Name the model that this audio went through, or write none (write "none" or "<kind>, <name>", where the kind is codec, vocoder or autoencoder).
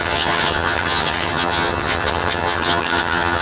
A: vocoder, HiFi-GAN